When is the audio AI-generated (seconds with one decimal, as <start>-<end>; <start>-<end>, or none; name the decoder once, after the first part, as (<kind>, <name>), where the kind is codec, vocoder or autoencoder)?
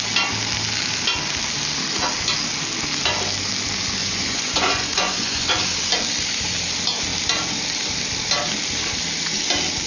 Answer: 4.0-5.5 (vocoder, Vocos)